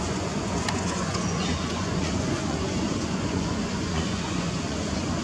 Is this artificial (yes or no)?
yes